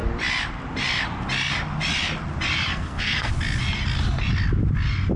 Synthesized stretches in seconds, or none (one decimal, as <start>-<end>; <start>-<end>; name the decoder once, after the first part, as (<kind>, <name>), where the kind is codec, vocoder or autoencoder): 2.7-3.3 (codec, SNAC)